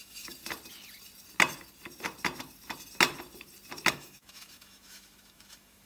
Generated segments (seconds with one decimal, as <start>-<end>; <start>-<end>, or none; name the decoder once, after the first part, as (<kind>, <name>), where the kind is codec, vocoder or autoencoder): 0.0-0.4 (autoencoder, DAC-VAE); 3.9-5.9